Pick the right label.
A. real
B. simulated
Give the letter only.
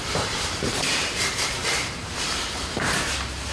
B